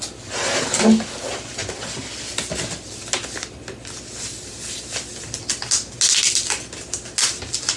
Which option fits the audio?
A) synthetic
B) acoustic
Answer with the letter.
B